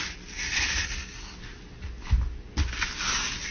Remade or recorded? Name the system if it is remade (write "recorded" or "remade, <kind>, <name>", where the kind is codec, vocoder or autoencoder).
recorded